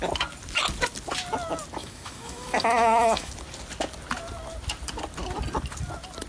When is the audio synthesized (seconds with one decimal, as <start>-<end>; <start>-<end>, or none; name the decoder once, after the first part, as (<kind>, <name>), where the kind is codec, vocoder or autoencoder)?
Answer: 1.8-3.3 (autoencoder, DAC-VAE)